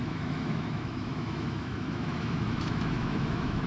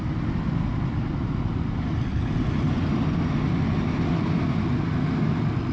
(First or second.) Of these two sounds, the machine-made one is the first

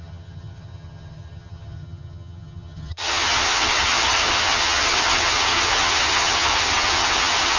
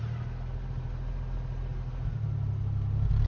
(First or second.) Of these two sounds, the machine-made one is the first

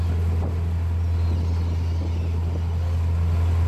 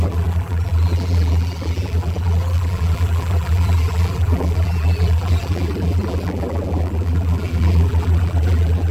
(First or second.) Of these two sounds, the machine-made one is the second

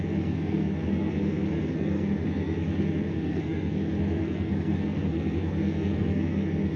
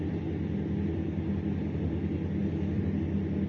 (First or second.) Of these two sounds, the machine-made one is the first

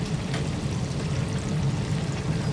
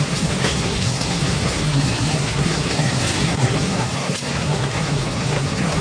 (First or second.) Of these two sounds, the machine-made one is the second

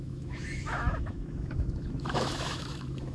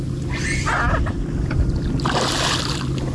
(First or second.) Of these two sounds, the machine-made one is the first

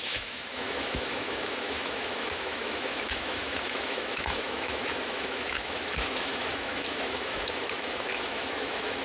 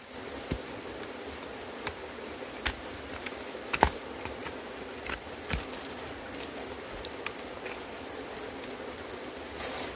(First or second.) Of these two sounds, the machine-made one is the first